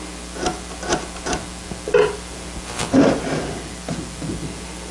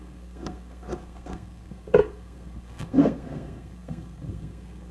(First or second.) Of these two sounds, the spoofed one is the second